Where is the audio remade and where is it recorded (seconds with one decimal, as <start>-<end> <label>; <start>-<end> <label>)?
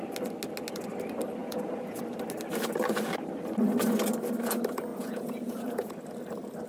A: 0.0-1.4 recorded; 1.4-2.0 remade; 2.0-4.9 recorded; 4.9-5.9 remade; 5.9-6.7 recorded